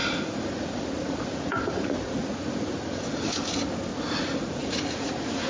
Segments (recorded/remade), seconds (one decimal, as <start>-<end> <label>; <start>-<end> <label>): 0.0-3.3 remade; 3.3-3.9 recorded; 3.9-5.5 remade